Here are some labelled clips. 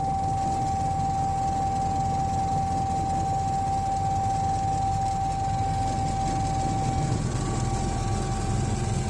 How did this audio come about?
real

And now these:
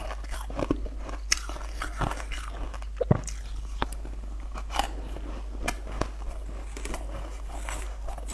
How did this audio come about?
real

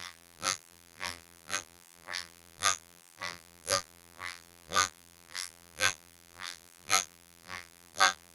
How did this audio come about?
fake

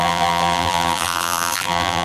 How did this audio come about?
fake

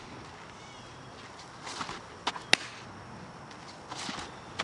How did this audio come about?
real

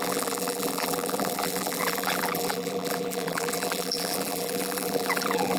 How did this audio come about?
fake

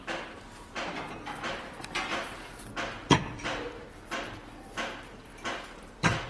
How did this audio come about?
fake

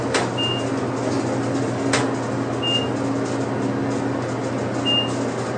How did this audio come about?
real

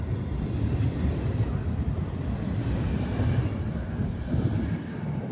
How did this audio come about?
fake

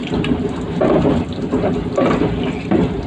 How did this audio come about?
fake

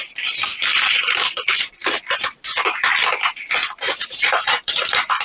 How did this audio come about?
fake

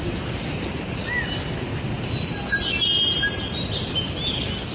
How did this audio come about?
real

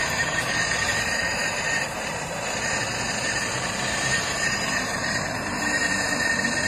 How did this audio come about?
fake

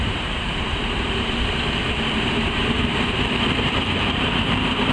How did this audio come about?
fake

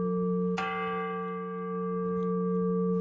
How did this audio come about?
real